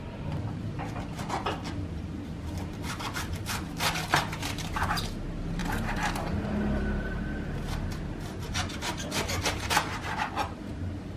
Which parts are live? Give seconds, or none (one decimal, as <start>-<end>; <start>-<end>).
0.0-11.2